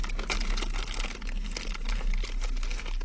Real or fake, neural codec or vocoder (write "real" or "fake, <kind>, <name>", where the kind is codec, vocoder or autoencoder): real